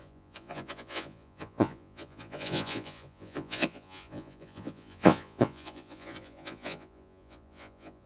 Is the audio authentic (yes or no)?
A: no